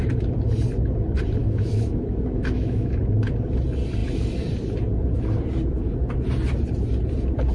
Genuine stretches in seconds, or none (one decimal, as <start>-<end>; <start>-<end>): 0.0-1.4; 3.0-7.5

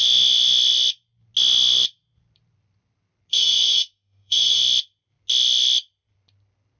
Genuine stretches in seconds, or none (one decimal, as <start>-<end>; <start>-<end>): 0.0-3.3; 4.6-6.8

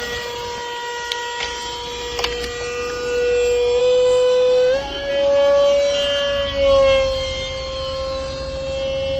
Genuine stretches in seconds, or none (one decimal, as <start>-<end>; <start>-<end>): 0.0-3.8; 5.1-9.2

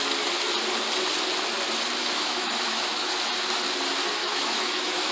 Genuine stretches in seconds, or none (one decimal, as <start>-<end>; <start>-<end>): 0.0-2.0; 3.1-4.2

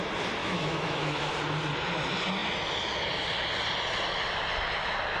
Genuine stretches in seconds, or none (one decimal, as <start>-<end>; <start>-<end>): 0.0-0.4; 1.3-5.2

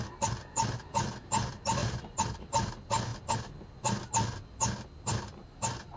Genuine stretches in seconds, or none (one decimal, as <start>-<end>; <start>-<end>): 0.0-6.0

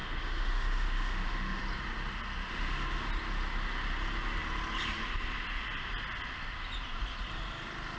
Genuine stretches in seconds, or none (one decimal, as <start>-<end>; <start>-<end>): 1.6-2.4; 3.1-8.0